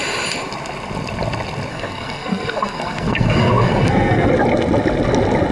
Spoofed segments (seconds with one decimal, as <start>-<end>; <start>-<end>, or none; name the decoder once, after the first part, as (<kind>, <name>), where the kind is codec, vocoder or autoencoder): 1.7-4.3 (codec, SNAC)